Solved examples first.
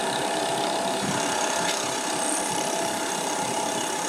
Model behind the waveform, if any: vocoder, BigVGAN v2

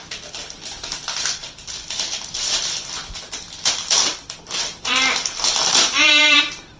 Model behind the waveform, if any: vocoder, BigVGAN v2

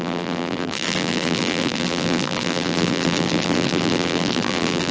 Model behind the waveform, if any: vocoder, BigVGAN v2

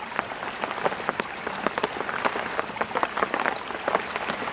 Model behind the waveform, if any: none